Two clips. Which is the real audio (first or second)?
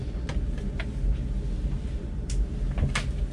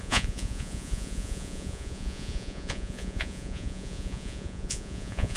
first